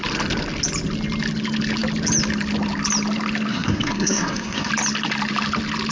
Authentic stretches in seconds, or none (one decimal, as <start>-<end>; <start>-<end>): 0.0-3.5; 4.7-5.9